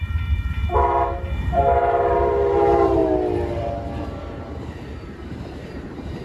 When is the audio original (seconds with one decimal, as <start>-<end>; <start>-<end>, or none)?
3.0-4.8